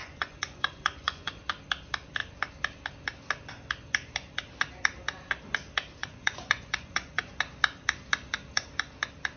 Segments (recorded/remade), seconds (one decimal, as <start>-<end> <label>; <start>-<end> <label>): 0.0-1.4 remade; 1.4-6.0 recorded; 6.0-7.2 remade; 7.2-9.4 recorded